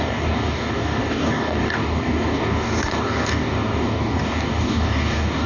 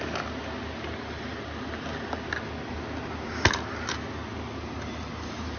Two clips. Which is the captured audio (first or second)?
second